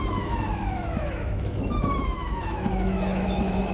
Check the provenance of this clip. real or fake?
fake